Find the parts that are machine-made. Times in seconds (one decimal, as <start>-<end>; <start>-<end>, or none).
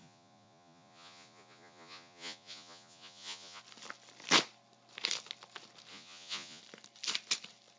0.0-3.6; 5.9-6.6